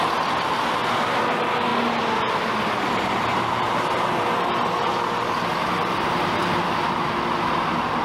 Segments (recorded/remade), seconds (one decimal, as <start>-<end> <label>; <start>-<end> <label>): 0.0-8.0 recorded